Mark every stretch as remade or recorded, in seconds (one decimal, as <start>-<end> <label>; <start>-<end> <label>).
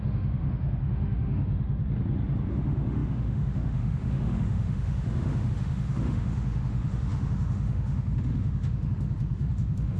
0.0-1.8 remade; 1.8-2.5 recorded; 2.5-10.0 remade